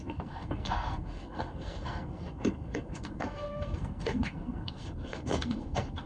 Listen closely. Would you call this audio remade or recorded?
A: remade